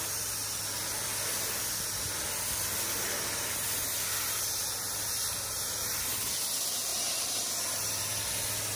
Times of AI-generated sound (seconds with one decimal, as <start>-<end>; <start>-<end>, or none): 6.9-7.5